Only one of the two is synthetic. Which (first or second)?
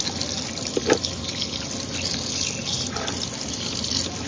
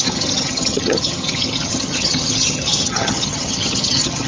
second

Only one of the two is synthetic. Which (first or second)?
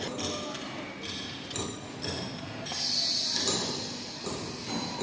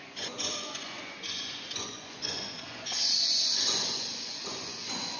second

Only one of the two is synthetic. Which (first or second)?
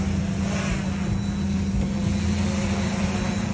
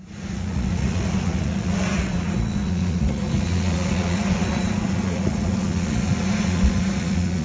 second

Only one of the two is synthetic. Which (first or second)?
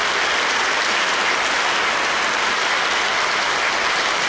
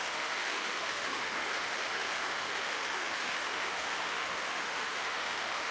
second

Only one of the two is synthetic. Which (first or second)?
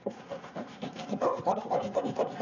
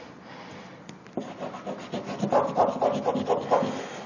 first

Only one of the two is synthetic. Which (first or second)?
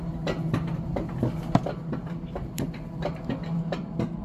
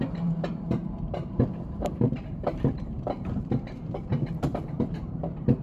second